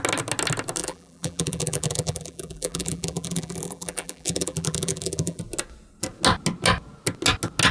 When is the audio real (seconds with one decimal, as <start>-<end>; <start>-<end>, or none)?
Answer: 0.0-0.8; 5.4-7.7